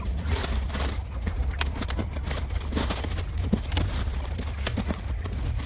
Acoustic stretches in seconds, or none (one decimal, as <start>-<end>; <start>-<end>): 0.4-0.9; 1.4-4.8